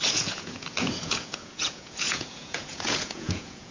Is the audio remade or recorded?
remade